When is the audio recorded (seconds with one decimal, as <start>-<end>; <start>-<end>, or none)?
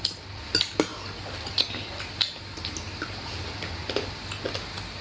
0.0-5.0